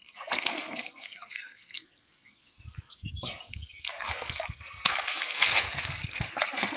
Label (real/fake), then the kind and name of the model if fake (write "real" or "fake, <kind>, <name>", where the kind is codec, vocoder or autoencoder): fake, codec, SNAC